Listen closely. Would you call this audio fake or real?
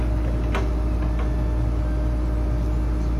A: real